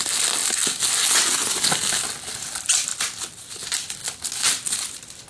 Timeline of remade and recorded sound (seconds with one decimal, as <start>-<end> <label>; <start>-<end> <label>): 0.0-5.3 recorded